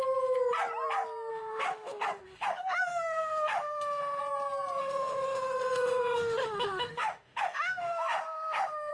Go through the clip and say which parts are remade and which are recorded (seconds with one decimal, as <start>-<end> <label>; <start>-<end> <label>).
0.0-1.3 recorded; 1.3-4.2 remade; 4.2-4.8 recorded; 4.8-8.9 remade